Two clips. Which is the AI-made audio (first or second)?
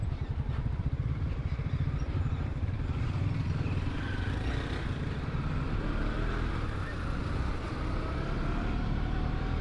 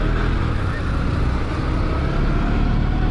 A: first